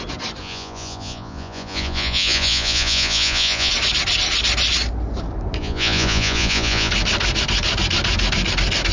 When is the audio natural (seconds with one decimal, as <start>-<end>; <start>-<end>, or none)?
0.0-0.4; 3.7-5.6; 6.9-8.9